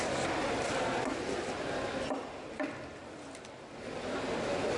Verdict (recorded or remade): recorded